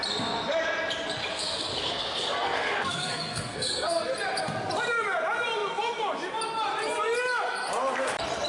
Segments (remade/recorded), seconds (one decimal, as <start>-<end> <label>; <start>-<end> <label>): 0.0-1.3 recorded; 1.3-4.0 remade; 4.0-8.5 recorded